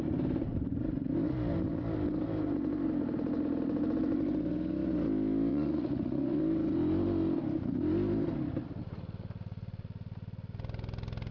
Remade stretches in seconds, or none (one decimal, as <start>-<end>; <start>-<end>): 5.5-6.4